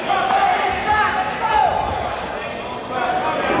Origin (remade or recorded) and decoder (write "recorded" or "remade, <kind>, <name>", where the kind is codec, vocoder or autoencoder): recorded